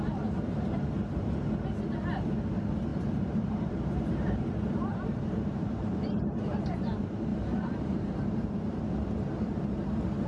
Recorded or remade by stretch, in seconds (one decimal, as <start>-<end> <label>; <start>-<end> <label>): 0.0-2.9 recorded; 2.9-6.8 remade; 6.8-7.3 recorded; 7.3-8.8 remade; 8.8-9.5 recorded; 9.5-10.3 remade